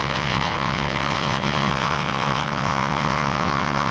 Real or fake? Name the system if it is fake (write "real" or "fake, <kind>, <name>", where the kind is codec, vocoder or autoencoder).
fake, vocoder, WaveNeXt